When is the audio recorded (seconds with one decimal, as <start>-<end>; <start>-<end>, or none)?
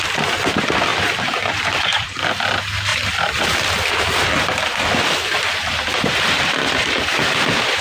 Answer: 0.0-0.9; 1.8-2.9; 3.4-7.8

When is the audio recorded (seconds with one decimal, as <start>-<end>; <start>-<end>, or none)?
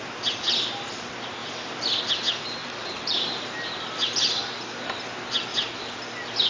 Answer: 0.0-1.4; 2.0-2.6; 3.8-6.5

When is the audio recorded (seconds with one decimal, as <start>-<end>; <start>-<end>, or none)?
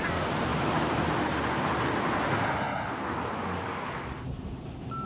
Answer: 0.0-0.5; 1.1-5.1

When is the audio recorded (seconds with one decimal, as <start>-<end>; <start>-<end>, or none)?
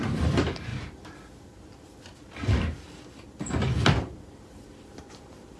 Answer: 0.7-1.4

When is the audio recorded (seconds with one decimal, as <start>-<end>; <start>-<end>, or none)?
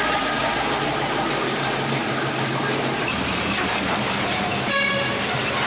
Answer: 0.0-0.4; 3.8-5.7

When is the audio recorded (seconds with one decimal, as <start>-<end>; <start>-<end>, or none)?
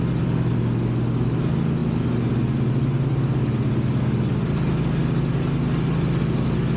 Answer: 0.0-6.8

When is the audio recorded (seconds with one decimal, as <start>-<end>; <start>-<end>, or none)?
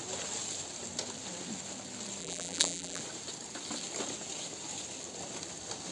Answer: 0.0-2.2; 3.0-5.9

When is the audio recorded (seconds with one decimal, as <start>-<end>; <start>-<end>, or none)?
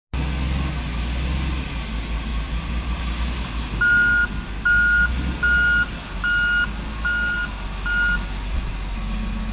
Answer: 0.0-2.3; 3.0-9.5